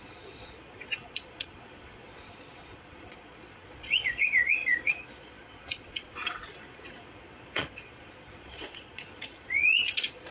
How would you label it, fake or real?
fake